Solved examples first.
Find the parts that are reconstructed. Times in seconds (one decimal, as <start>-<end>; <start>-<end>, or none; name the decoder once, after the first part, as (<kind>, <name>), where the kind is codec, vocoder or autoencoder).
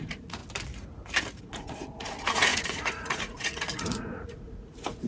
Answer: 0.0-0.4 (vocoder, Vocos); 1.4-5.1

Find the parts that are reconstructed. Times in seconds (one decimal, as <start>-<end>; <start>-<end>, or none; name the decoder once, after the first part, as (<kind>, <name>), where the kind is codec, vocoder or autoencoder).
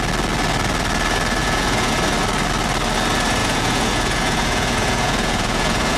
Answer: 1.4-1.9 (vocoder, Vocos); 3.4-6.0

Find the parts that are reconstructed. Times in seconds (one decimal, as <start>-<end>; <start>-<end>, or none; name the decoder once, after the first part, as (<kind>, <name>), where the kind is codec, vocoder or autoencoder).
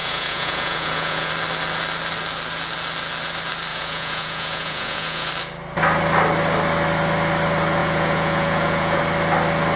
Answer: 0.0-1.3 (vocoder, Vocos); 3.7-5.3; 7.8-9.0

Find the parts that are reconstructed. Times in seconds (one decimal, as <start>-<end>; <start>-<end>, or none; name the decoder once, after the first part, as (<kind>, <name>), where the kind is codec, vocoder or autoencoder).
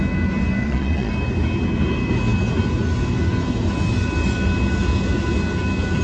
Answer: 0.6-1.1 (vocoder, Vocos)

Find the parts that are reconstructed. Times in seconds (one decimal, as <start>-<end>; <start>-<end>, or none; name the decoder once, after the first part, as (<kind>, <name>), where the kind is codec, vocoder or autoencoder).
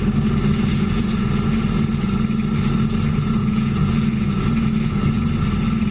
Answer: 0.7-1.3 (vocoder, Vocos); 3.4-5.3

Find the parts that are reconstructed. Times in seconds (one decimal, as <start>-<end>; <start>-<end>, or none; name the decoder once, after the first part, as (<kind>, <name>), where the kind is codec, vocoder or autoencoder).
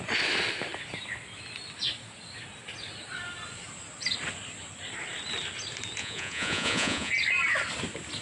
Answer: 6.0-7.1 (vocoder, Vocos)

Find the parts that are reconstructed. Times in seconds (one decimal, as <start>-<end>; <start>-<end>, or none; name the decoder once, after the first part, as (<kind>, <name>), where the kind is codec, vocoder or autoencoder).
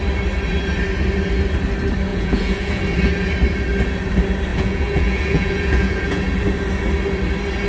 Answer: 2.1-2.8 (vocoder, Vocos); 4.5-6.2